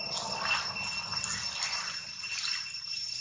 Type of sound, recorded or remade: recorded